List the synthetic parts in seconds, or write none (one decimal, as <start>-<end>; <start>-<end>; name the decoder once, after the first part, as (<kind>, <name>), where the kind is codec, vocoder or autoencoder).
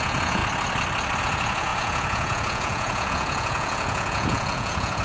0.0-0.4 (vocoder, Vocos); 1.2-5.0